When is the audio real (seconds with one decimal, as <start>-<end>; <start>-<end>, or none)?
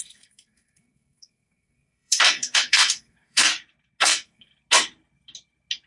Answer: 3.5-4.0; 4.5-5.9